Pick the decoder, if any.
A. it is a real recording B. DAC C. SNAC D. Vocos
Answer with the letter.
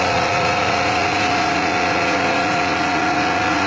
D